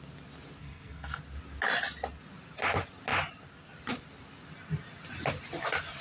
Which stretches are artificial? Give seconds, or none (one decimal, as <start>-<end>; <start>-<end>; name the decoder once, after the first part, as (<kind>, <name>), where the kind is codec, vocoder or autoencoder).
0.6-1.2 (codec, SNAC)